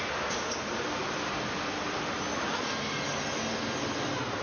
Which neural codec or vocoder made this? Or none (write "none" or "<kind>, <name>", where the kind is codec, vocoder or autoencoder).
none